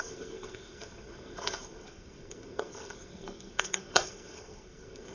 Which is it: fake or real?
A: fake